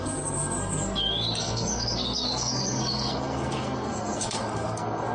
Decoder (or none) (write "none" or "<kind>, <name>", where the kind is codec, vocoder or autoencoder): codec, SNAC